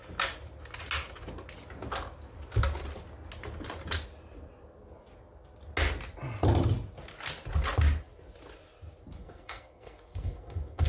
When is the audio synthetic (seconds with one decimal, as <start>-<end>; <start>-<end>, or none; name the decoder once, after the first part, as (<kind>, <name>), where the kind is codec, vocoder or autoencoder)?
9.2-10.9 (codec, SNAC)